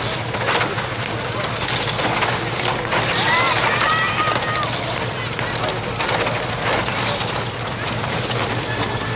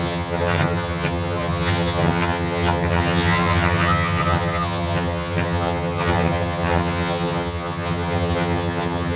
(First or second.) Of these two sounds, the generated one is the second